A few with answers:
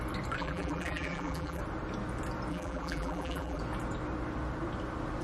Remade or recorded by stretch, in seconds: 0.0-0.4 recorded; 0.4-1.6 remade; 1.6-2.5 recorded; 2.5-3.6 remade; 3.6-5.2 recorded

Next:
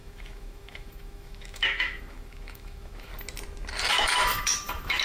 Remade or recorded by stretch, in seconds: 0.0-3.1 remade; 3.1-3.9 recorded; 3.9-5.0 remade

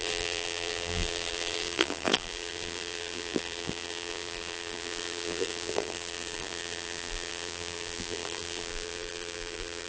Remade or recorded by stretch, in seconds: 0.0-9.9 remade